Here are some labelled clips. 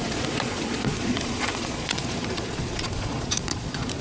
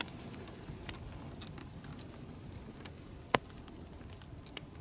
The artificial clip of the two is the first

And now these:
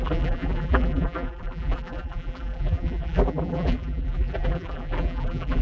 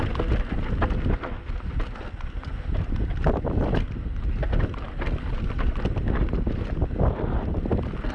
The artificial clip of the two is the first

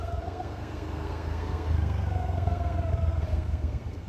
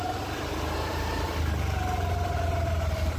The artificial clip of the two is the first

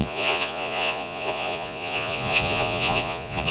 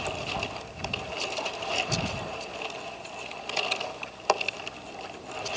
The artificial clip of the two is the first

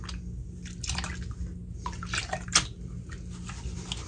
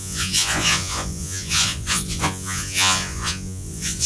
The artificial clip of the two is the second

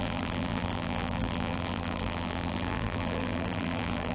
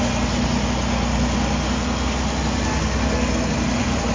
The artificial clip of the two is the first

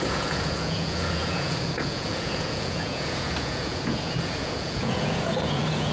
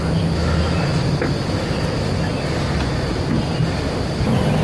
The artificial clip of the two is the first